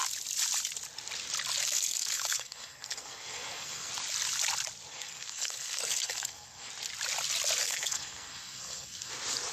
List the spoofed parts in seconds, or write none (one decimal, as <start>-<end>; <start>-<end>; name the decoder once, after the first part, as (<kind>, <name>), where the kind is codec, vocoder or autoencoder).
1.6-3.9 (codec, SNAC); 4.9-6.7; 7.6-9.1